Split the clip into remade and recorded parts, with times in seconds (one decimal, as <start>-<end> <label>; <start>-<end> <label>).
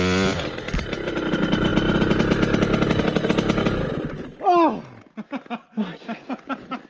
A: 0.0-6.9 recorded